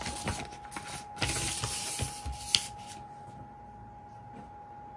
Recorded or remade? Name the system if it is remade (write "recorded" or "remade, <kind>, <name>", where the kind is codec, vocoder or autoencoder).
recorded